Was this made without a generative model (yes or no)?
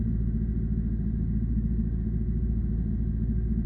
yes